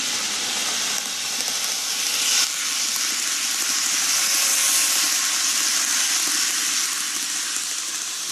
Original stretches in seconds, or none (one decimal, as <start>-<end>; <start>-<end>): 0.0-8.3

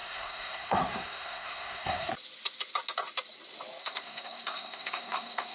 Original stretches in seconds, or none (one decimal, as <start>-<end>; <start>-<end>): 2.1-3.8

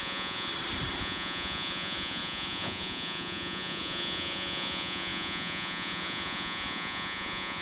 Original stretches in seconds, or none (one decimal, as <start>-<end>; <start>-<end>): 0.5-1.0

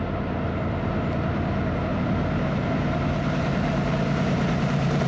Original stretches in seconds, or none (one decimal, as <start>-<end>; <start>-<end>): 0.0-1.9

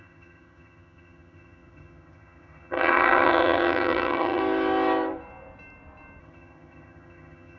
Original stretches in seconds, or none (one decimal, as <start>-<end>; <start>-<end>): 4.4-6.2

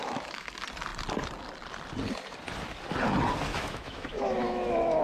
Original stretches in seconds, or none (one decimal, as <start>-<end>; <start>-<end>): 0.5-3.5

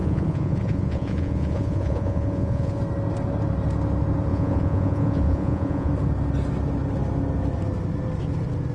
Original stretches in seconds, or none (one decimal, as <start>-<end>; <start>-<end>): 2.8-4.3; 5.9-8.7